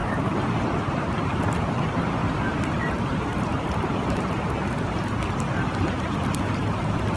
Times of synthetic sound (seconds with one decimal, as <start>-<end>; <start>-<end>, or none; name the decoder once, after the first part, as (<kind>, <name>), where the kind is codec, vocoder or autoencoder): 0.0-0.6 (vocoder, BigVGAN v2); 2.2-4.3